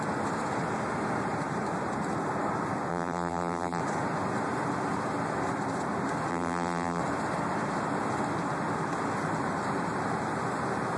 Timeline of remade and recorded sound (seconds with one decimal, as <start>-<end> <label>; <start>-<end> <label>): 0.0-2.9 recorded; 2.9-3.8 remade; 3.8-6.3 recorded; 6.3-7.0 remade; 7.0-11.0 recorded